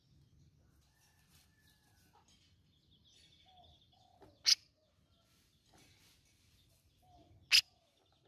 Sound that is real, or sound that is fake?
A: real